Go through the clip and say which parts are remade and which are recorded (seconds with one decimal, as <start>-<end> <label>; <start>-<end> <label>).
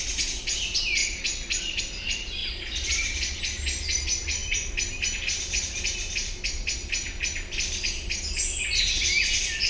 0.0-9.7 recorded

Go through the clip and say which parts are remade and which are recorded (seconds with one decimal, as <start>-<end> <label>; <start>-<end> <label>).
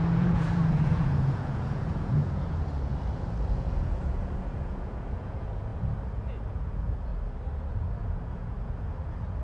0.0-2.9 remade; 2.9-3.5 recorded; 3.5-5.7 remade; 5.7-6.5 recorded; 6.5-7.1 remade; 7.1-7.7 recorded; 7.7-9.4 remade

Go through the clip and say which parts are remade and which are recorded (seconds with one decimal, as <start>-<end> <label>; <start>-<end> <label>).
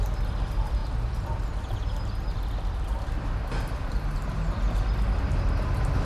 0.0-6.1 recorded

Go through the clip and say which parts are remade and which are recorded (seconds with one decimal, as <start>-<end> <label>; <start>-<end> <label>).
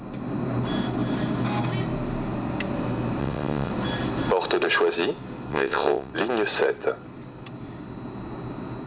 0.0-3.2 recorded; 3.2-3.7 remade; 3.7-5.5 recorded; 5.5-6.1 remade; 6.1-8.9 recorded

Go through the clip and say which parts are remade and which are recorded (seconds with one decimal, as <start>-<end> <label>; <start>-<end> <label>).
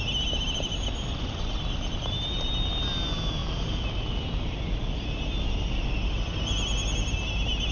0.0-1.1 recorded; 1.1-1.6 remade; 1.6-7.7 recorded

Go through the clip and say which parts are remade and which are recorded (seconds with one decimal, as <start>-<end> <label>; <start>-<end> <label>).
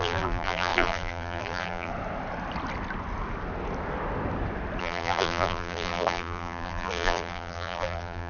0.0-1.9 remade; 1.9-4.8 recorded; 4.8-8.3 remade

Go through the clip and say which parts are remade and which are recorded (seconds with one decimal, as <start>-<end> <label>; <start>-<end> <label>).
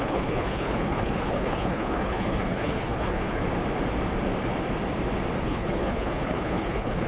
0.0-3.4 remade; 3.4-5.4 recorded; 5.4-7.1 remade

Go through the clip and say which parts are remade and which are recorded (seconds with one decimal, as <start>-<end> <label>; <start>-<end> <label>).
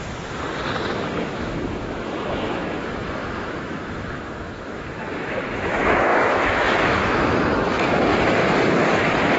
0.0-0.9 recorded; 0.9-8.1 remade; 8.1-9.4 recorded